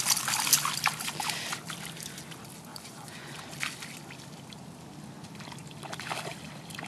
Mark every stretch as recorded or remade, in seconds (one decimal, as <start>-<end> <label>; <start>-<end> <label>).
0.0-2.7 recorded; 2.7-3.4 remade; 3.4-6.9 recorded